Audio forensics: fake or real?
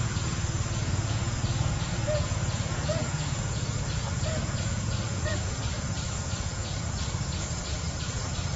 fake